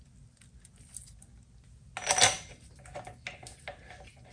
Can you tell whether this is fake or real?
real